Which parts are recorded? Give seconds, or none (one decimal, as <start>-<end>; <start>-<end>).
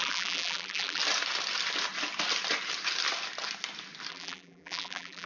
1.0-4.1